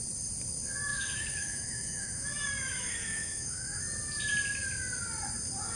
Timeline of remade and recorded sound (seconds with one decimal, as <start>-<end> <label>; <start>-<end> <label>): 0.0-0.9 recorded; 0.9-3.8 remade; 3.8-5.8 recorded

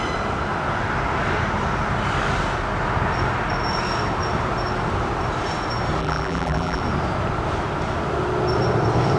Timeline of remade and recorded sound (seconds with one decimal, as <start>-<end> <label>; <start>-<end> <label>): 0.0-6.0 recorded; 6.0-6.8 remade; 6.8-9.2 recorded

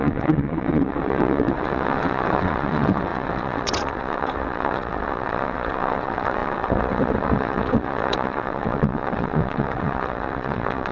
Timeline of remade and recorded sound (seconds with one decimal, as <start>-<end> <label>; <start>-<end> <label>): 0.0-10.9 remade

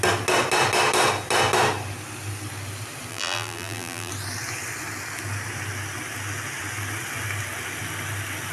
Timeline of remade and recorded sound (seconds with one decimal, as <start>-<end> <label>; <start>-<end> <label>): 0.0-3.1 recorded; 3.1-4.1 remade; 4.1-8.5 recorded

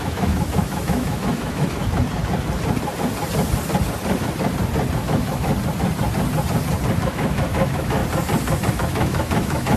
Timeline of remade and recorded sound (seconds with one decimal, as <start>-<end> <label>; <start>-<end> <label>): 0.0-1.8 remade; 1.8-5.0 recorded; 5.0-5.5 remade; 5.5-7.0 recorded; 7.0-8.0 remade; 8.0-8.7 recorded; 8.7-9.8 remade

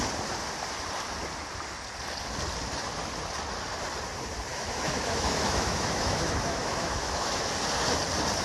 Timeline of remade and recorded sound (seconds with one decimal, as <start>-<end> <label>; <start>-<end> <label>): 0.0-4.5 recorded; 4.5-7.5 remade; 7.5-8.4 recorded

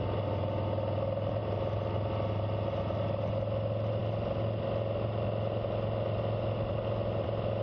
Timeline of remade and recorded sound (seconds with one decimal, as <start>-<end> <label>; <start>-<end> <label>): 0.0-7.6 recorded

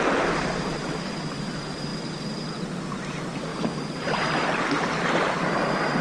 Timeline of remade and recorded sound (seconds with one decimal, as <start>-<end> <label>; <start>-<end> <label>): 0.0-6.0 recorded